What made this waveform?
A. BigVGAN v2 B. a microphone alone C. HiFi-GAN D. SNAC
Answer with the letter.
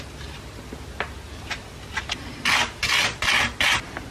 B